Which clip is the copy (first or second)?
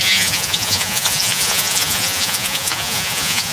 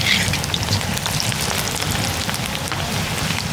first